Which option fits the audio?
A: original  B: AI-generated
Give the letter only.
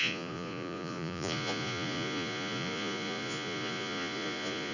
B